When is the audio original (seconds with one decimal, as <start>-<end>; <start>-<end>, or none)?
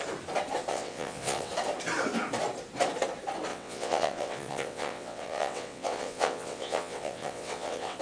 0.0-0.7; 1.5-3.5